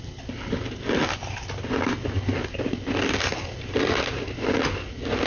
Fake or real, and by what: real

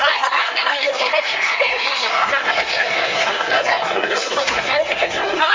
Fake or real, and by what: fake, codec, SNAC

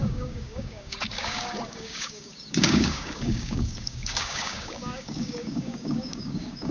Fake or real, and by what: fake, codec, DAC